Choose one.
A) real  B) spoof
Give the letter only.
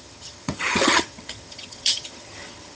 B